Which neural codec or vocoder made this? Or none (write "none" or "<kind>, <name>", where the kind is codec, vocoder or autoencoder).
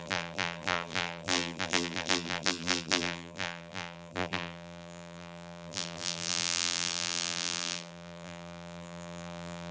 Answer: vocoder, BigVGAN v2